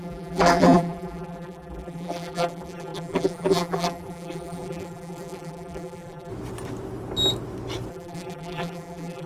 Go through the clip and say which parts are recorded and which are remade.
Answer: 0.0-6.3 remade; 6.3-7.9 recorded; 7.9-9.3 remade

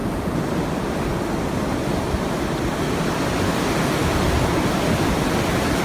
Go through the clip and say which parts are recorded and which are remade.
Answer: 0.0-5.8 recorded

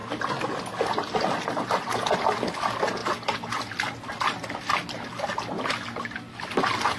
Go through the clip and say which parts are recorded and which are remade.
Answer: 0.0-7.0 recorded